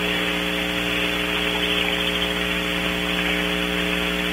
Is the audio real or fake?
real